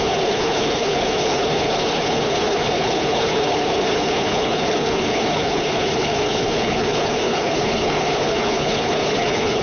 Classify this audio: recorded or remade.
remade